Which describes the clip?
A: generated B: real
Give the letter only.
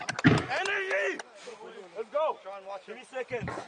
B